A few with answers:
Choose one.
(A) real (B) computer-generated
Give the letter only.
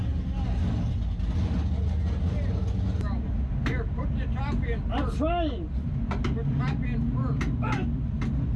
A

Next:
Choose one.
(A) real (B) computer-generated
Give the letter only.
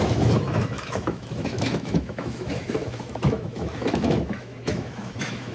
B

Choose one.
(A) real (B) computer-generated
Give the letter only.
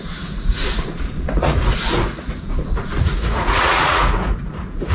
B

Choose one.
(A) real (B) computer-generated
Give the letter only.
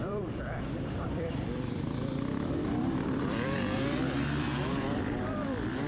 B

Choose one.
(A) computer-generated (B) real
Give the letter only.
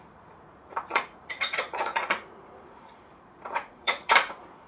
A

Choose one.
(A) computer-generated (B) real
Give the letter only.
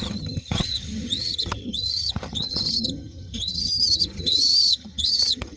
A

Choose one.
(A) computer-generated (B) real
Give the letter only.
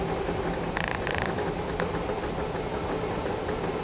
B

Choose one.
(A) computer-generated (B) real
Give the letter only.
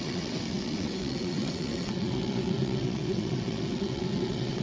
A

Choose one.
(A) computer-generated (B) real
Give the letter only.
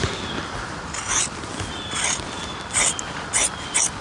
B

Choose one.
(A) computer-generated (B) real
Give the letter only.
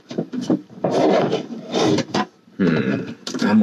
A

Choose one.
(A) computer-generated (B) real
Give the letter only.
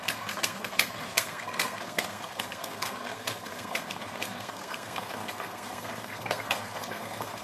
A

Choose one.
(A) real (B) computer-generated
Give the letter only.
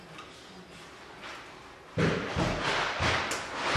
A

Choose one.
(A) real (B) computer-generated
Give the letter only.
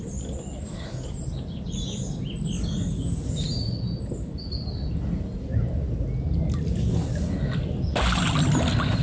A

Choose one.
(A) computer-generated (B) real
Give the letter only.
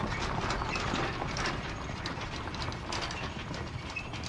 B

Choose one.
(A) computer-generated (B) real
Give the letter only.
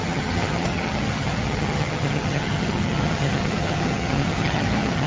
A